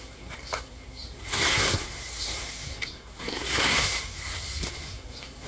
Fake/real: fake